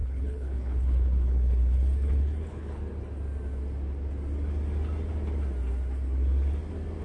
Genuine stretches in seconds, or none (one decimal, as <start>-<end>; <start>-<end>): 2.8-7.0